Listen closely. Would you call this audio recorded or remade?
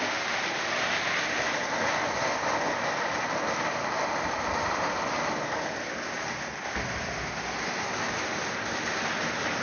recorded